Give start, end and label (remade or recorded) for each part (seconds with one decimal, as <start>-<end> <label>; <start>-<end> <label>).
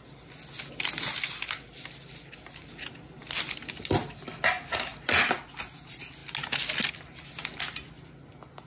0.0-8.7 recorded